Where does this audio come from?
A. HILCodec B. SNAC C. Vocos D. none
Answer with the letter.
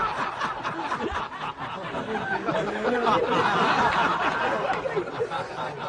D